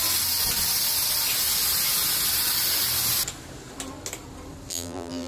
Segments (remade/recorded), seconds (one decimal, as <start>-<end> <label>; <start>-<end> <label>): 0.0-4.7 recorded; 4.7-5.3 remade